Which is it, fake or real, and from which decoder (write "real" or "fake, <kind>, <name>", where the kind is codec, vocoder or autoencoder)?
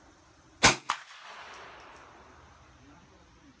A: real